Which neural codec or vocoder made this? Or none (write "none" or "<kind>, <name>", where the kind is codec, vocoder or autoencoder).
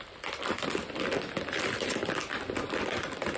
none